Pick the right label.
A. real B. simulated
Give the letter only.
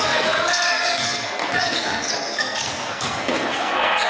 B